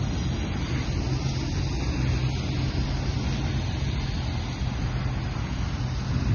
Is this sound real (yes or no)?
yes